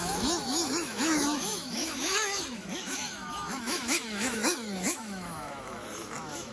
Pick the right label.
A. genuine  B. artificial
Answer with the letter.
B